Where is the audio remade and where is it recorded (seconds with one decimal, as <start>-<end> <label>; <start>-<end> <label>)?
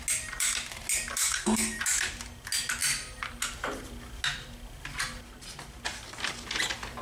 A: 0.0-1.2 recorded; 1.2-1.8 remade; 1.8-7.0 recorded